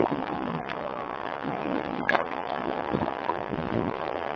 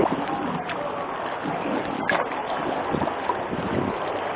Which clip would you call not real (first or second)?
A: first